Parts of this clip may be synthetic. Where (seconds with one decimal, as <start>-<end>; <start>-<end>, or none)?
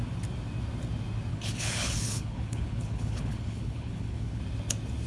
1.3-4.4